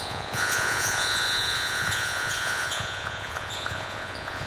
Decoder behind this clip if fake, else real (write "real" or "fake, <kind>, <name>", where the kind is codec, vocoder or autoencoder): fake, vocoder, Vocos